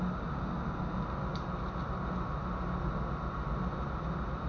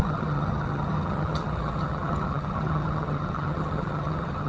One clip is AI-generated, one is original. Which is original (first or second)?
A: first